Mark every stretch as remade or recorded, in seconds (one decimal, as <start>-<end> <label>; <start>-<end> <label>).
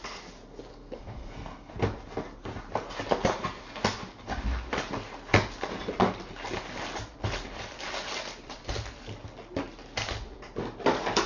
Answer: 0.0-0.7 recorded; 0.7-1.7 remade; 1.7-11.3 recorded